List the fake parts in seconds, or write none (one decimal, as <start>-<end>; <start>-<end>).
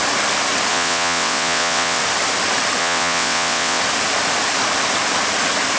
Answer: 0.7-2.0; 2.8-3.8